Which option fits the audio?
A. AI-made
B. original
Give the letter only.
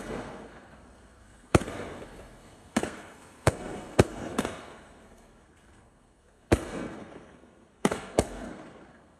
A